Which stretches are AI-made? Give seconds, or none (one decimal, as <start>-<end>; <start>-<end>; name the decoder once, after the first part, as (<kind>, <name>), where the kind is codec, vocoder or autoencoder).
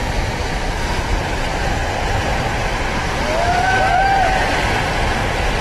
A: none